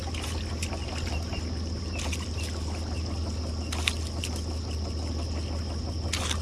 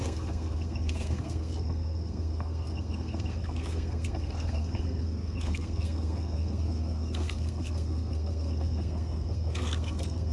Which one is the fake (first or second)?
second